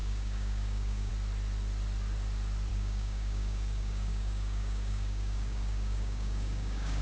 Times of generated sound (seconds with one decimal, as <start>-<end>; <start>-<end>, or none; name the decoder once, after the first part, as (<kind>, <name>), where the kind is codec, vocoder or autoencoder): 0.0-1.1 (codec, DAC); 2.7-7.0

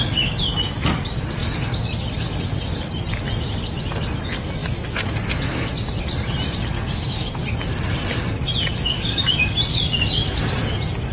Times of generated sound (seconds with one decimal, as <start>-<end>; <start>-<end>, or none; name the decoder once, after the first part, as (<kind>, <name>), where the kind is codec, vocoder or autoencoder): 6.7-7.4 (codec, DAC); 8.8-9.4

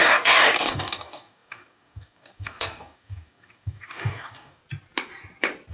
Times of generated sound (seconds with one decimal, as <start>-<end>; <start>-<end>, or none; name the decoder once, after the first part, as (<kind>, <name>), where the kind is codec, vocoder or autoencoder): 0.0-4.6 (codec, DAC)

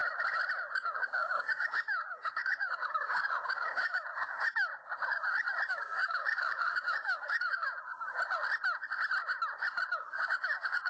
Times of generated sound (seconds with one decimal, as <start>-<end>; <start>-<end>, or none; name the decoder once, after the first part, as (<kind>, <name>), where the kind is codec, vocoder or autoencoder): 0.7-4.7 (codec, DAC); 5.7-7.9; 9.9-10.9